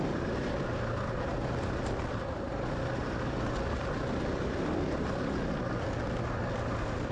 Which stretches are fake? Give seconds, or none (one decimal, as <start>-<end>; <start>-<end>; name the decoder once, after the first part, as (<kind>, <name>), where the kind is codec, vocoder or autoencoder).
none